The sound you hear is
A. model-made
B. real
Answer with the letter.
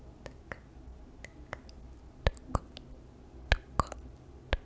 B